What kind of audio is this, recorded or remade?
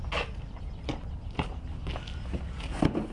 recorded